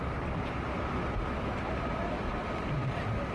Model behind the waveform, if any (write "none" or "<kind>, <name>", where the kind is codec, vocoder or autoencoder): none